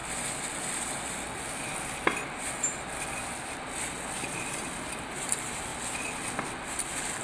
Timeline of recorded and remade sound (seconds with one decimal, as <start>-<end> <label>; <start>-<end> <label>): 0.0-4.3 recorded; 4.3-5.7 remade; 5.7-6.7 recorded; 6.7-7.2 remade